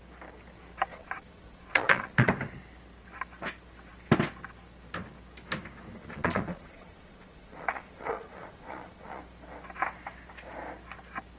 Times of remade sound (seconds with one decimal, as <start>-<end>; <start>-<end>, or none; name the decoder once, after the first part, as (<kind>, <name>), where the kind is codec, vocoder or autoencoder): 0.9-2.3 (vocoder, Vocos); 6.0-9.2